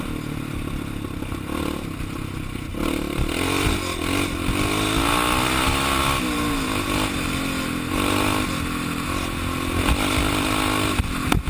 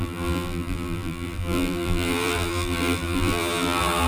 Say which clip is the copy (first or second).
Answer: second